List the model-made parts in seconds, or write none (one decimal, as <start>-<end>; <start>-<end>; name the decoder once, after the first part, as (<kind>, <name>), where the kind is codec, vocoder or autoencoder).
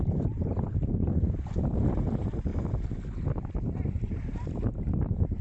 0.0-2.5 (vocoder, BigVGAN v2); 3.6-5.4